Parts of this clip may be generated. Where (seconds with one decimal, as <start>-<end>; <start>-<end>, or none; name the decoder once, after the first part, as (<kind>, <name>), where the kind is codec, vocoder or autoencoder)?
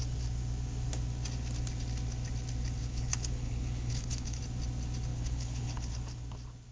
2.8-4.4 (codec, HILCodec); 5.1-5.9